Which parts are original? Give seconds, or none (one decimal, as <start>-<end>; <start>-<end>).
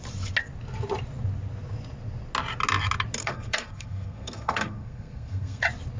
0.0-3.2; 5.6-6.0